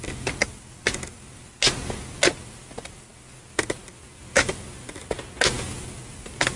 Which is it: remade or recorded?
recorded